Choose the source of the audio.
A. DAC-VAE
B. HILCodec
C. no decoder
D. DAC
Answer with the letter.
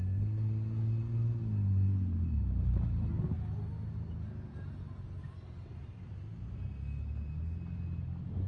C